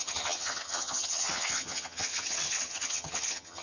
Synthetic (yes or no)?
yes